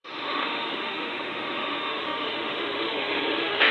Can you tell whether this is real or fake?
fake